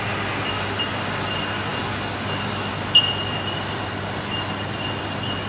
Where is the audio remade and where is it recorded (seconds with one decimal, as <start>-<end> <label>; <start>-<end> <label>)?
0.0-5.5 recorded